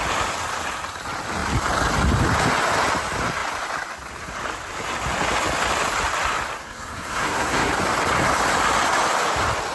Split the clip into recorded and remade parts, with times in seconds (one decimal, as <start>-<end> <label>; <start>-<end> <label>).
0.0-6.6 recorded; 6.6-7.7 remade; 7.7-9.7 recorded